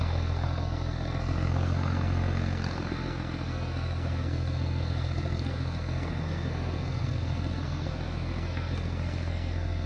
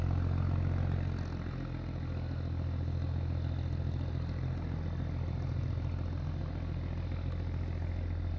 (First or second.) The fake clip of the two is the first